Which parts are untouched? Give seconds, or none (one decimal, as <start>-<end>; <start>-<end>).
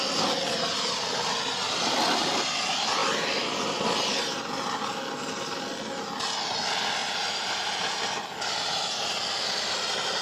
0.0-10.2